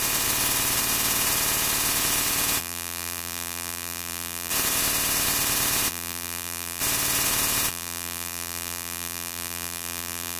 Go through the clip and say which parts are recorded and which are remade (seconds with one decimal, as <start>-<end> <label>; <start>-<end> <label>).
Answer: 0.0-2.6 recorded; 2.6-4.5 remade; 4.5-5.9 recorded; 5.9-6.8 remade; 6.8-7.7 recorded; 7.7-10.4 remade